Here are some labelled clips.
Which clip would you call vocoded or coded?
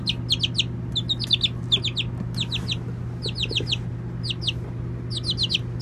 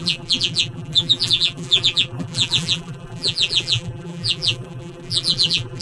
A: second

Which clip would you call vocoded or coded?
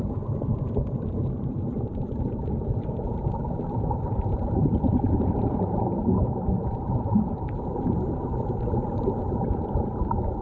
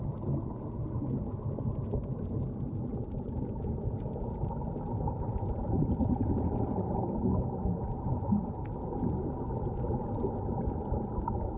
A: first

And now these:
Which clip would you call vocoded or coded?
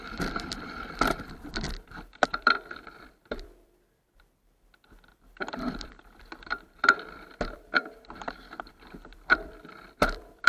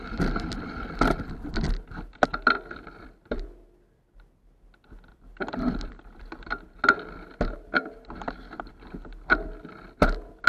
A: first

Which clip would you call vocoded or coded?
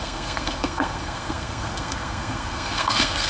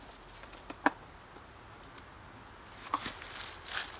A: first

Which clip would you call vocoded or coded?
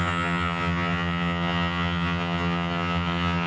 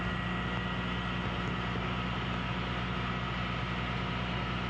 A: first